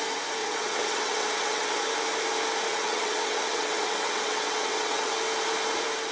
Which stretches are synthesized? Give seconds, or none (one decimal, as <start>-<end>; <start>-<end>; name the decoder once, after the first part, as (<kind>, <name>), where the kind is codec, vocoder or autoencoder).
0.4-1.8 (vocoder, WaveNeXt); 2.7-5.1